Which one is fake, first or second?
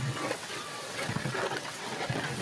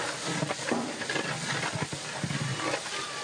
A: first